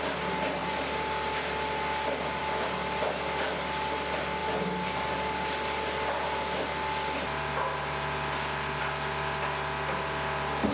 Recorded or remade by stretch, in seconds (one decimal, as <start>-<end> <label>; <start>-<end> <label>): 0.0-10.7 recorded